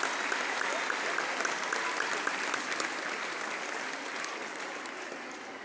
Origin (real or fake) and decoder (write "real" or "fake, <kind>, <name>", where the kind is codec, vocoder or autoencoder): real